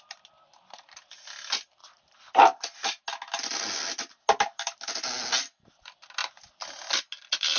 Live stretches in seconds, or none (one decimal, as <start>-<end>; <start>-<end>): 0.0-7.6